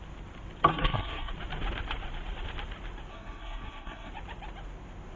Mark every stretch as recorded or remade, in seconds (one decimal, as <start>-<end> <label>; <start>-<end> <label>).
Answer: 0.0-0.7 recorded; 0.7-1.3 remade; 1.3-3.1 recorded; 3.1-4.1 remade; 4.1-5.2 recorded